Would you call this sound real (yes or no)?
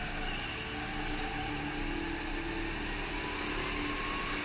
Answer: yes